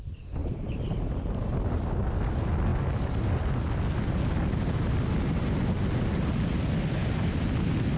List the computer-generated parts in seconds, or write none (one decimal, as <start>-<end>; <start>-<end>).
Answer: none